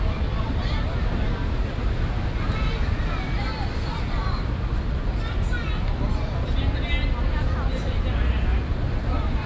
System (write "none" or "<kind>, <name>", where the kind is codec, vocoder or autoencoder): none